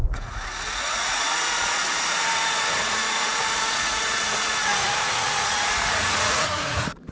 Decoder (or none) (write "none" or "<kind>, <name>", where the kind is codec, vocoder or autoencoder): vocoder, Vocos